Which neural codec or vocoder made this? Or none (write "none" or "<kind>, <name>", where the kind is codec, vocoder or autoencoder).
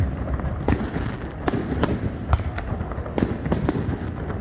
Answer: none